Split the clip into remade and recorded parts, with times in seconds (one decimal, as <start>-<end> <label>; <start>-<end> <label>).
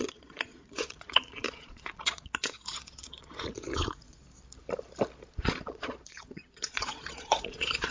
0.0-4.2 remade; 4.2-5.3 recorded; 5.3-7.9 remade